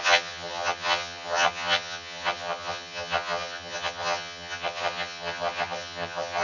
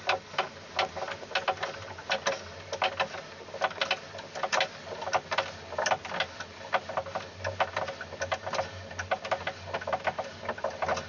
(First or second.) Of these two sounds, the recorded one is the second